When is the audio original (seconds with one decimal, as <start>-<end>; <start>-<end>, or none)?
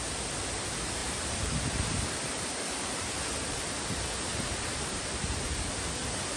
0.0-1.0; 3.6-4.3; 5.7-6.4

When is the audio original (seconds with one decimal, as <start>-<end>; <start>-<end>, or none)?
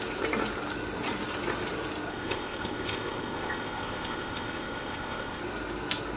0.0-2.1; 5.4-6.2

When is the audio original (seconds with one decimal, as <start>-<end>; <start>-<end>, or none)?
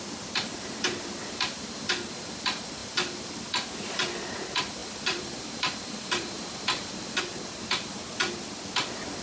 0.0-4.8; 7.2-9.2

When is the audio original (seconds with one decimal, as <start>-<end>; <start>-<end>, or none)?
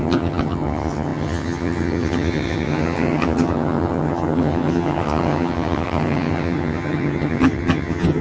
none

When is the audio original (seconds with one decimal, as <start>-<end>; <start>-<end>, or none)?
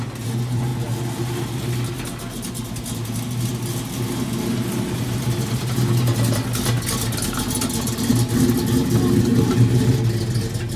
0.0-9.3; 9.9-10.8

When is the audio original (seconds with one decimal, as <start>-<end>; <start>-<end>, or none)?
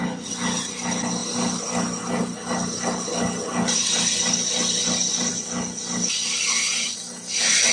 0.0-7.7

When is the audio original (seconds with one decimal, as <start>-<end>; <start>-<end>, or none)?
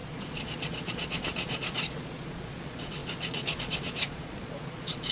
none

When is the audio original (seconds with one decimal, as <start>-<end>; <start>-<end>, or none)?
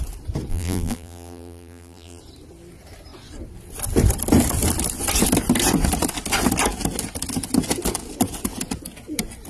0.0-0.5; 2.2-9.5